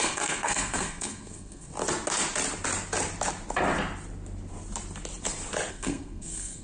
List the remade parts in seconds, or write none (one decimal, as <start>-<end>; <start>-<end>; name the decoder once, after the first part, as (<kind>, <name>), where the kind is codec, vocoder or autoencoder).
0.0-1.7 (codec, SNAC); 5.7-6.6